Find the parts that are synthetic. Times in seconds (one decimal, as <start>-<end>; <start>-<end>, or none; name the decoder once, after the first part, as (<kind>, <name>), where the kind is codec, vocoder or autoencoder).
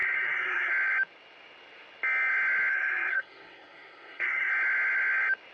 0.0-0.7 (codec, SNAC); 2.7-4.5